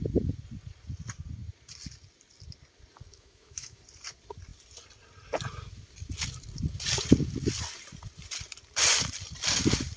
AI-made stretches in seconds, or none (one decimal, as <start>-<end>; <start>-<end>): 3.1-3.8